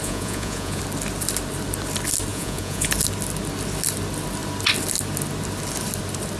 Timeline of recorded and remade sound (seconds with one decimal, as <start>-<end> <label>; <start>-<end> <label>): 0.0-0.8 remade; 0.8-2.3 recorded; 2.3-2.9 remade; 2.9-6.4 recorded